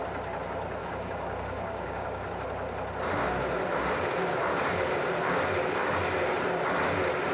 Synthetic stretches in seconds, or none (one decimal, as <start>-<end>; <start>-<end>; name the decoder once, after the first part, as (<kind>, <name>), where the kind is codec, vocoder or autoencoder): 0.8-2.3 (codec, DAC); 4.5-5.1